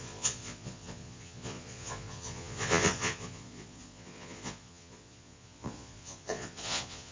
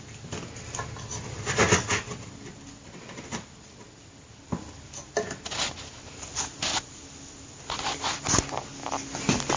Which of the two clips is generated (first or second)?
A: first